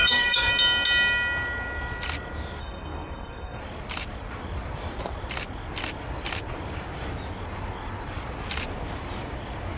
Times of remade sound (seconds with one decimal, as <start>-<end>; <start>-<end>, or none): 0.0-0.5; 2.6-3.6